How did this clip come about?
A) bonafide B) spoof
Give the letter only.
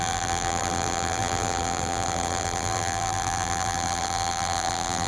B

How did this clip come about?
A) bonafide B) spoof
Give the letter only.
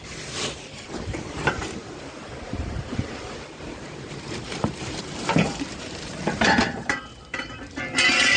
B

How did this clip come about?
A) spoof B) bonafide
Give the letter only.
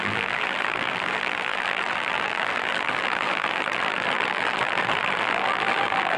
A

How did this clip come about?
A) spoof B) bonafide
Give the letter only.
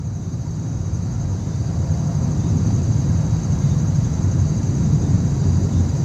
A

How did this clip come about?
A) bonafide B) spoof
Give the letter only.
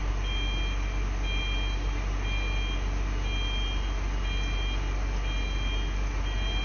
A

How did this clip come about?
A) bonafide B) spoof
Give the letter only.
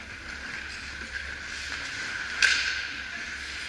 A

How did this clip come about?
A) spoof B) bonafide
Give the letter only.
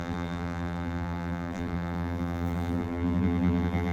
A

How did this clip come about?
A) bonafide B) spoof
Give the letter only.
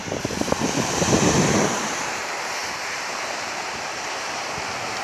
B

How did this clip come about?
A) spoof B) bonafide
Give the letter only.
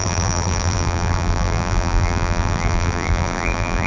A